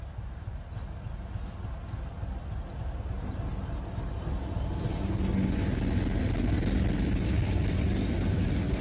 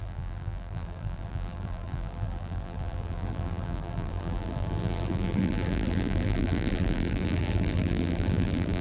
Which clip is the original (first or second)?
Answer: first